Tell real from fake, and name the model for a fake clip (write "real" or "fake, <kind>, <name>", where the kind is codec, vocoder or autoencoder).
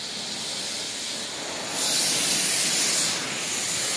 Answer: real